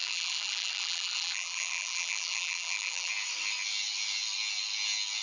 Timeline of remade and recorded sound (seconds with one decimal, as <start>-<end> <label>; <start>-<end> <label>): 0.0-3.1 remade; 3.1-5.2 recorded